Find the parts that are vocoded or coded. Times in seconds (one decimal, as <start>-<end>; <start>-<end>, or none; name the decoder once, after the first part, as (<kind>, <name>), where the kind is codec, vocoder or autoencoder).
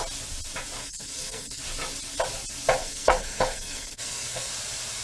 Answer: 0.8-1.6 (codec, SNAC); 2.8-4.5